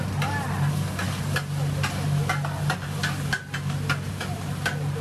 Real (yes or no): yes